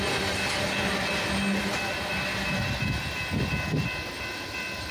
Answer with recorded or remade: recorded